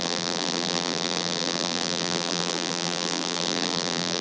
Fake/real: fake